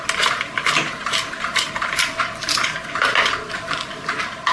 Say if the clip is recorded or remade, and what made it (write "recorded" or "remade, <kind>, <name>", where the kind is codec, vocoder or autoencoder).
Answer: recorded